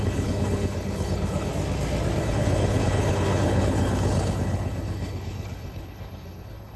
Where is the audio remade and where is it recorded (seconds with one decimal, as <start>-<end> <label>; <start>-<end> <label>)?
0.0-1.5 remade; 1.5-2.2 recorded; 2.2-6.8 remade